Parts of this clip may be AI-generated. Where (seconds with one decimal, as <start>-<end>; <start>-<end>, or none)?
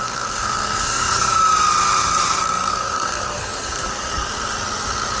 0.0-1.3; 2.7-4.3